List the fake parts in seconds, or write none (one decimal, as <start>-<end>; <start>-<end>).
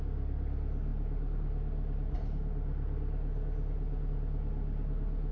none